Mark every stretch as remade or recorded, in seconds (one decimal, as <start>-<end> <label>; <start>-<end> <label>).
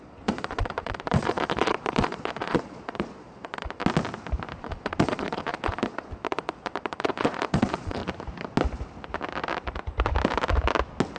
0.0-3.8 remade; 3.8-4.6 recorded; 4.6-8.0 remade; 8.0-11.2 recorded